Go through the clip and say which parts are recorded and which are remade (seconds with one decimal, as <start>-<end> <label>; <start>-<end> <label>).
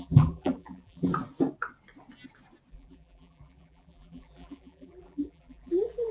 0.0-1.1 remade; 1.1-2.7 recorded; 2.7-6.1 remade